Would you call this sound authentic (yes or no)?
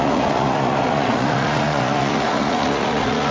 no